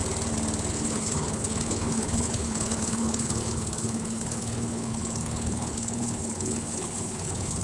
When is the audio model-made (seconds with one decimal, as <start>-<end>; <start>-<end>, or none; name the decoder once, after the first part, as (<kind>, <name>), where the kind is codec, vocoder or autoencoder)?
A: 0.7-7.6 (codec, HILCodec)